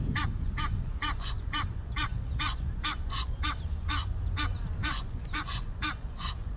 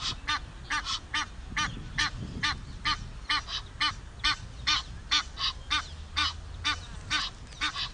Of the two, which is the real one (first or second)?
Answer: second